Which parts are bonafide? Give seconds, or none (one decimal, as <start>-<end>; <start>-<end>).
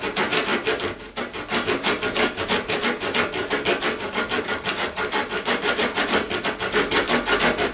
0.0-7.7